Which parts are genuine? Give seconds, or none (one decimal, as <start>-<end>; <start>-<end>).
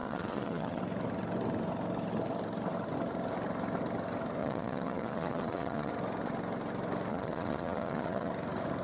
0.8-4.4; 5.9-7.1; 8.3-8.8